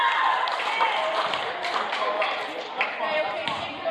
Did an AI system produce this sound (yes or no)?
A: no